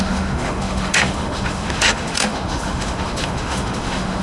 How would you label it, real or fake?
fake